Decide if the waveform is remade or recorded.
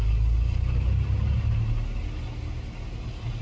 recorded